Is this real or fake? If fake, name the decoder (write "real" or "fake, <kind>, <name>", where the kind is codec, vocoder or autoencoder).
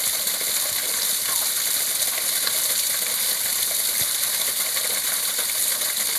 real